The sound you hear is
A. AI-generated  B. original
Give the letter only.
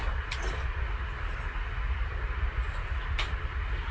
B